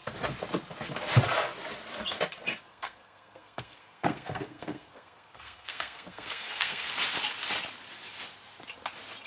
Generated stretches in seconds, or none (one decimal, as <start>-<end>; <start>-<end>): 2.7-6.9